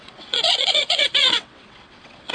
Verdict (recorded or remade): remade